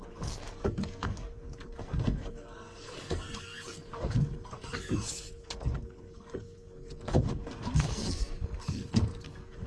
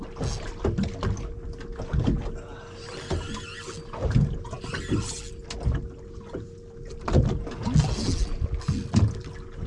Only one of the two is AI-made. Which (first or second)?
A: first